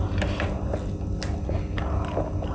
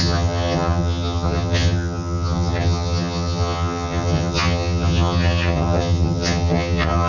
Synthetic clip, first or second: second